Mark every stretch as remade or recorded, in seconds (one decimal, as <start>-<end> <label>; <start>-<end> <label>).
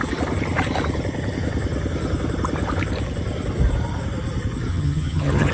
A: 0.0-4.7 recorded; 4.7-5.5 remade